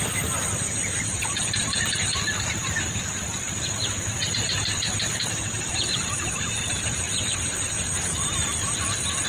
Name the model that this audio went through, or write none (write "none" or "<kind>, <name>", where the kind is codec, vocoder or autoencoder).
vocoder, BigVGAN v2